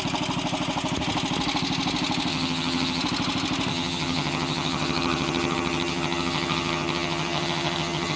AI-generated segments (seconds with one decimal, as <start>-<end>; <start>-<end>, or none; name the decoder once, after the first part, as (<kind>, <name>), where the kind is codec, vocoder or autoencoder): 2.3-3.0 (vocoder, HiFi-GAN); 3.7-8.2